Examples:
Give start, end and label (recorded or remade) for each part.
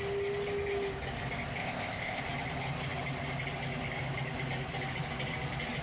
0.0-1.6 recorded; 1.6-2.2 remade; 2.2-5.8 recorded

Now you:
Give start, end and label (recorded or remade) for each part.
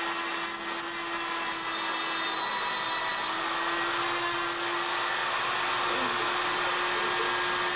0.0-7.8 recorded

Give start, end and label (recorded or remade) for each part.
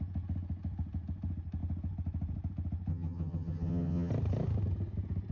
0.0-2.9 recorded; 2.9-4.1 remade; 4.1-5.3 recorded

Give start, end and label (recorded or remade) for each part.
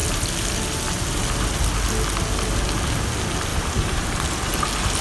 0.0-3.5 recorded; 3.5-4.5 remade; 4.5-5.0 recorded